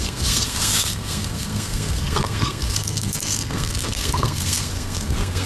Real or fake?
fake